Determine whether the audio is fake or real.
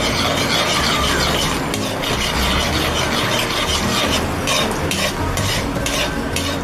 real